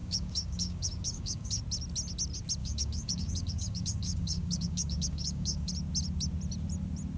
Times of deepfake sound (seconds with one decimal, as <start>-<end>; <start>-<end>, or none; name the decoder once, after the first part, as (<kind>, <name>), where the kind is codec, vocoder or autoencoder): 0.0-1.6 (codec, DAC); 2.6-5.7